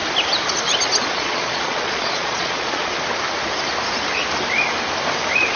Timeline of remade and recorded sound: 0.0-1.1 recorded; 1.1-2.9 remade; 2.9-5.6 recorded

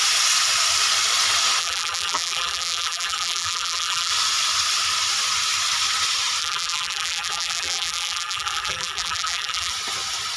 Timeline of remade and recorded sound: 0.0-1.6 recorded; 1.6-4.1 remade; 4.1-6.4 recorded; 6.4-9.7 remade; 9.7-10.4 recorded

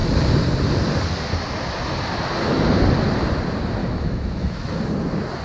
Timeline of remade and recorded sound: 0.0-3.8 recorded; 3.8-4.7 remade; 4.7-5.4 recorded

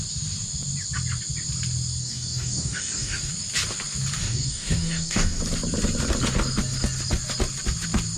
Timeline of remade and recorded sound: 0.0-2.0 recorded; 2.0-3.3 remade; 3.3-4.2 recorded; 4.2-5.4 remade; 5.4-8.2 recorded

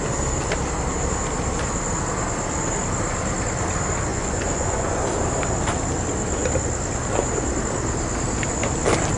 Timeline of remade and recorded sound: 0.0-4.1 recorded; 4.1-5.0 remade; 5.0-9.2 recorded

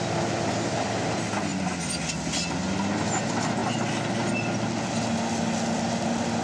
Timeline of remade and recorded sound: 0.0-6.4 recorded

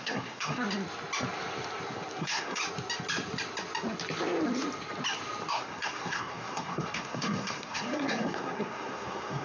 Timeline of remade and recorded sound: 0.0-0.6 remade; 0.6-2.2 recorded; 2.2-2.6 remade; 2.6-5.5 recorded; 5.5-9.4 remade

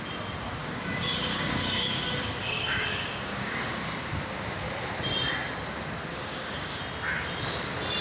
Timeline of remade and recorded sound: 0.0-0.6 recorded; 0.6-3.7 remade; 3.7-6.1 recorded; 6.1-6.8 remade; 6.8-8.0 recorded